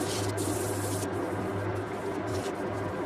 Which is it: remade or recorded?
recorded